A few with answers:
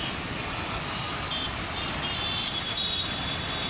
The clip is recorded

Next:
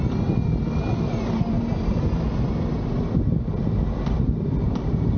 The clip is recorded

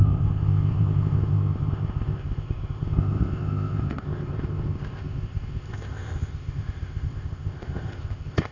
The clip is remade